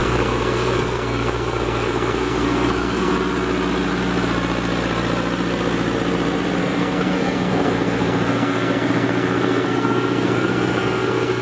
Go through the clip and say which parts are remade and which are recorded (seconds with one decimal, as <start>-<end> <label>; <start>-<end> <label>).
0.0-3.1 remade; 3.1-6.6 recorded; 6.6-11.4 remade